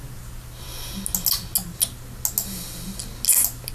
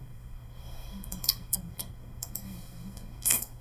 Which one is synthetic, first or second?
second